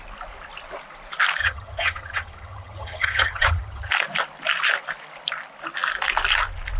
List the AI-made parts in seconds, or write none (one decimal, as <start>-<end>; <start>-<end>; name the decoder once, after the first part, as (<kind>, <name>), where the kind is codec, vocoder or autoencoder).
1.4-3.9 (vocoder, HiFi-GAN)